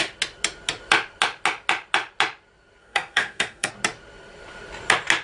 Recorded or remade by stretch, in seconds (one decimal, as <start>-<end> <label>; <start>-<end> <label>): 0.0-2.8 recorded; 2.8-3.7 remade; 3.7-5.2 recorded